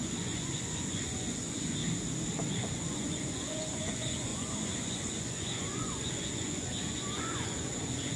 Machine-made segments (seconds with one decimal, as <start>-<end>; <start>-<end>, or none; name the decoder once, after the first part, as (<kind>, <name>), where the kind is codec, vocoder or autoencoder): 0.0-1.8 (vocoder, Vocos); 2.5-8.2